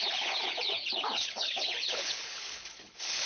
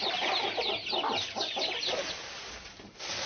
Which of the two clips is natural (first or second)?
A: second